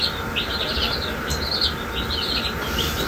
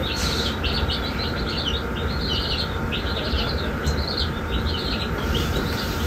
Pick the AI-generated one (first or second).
second